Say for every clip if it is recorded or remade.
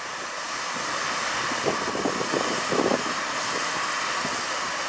recorded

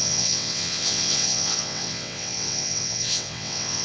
remade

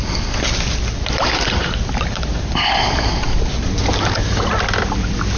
recorded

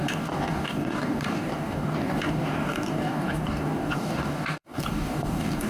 remade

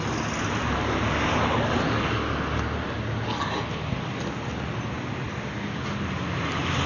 recorded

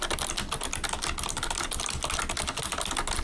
recorded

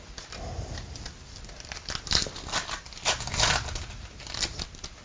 recorded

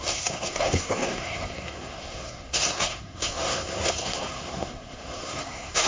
remade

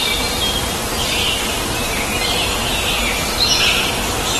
remade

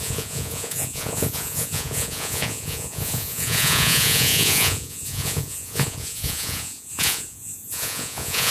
remade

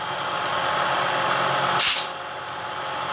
recorded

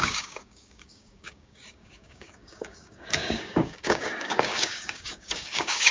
remade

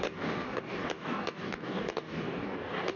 remade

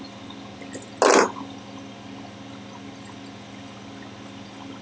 recorded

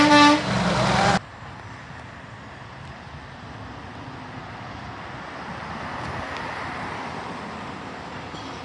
recorded